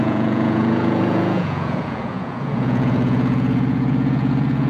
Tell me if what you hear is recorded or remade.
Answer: remade